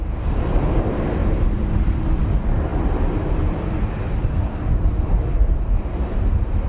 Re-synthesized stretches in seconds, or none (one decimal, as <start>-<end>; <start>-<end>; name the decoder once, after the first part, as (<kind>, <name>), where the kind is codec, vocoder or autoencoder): 5.3-5.8 (vocoder, BigVGAN v2)